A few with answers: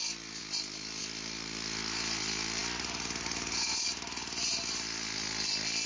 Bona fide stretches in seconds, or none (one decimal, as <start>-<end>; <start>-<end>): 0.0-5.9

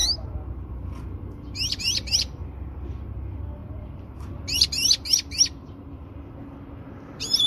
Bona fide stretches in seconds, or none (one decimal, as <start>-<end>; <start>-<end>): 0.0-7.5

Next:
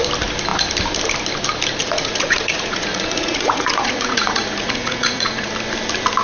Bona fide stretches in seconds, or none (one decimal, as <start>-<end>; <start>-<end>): 0.0-1.8; 5.5-6.2

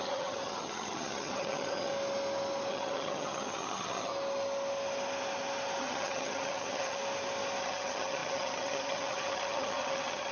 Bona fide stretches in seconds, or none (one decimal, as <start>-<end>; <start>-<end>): 1.9-2.7; 4.1-5.8; 7.0-7.6